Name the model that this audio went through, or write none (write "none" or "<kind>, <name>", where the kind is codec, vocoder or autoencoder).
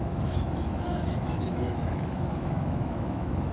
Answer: autoencoder, DAC-VAE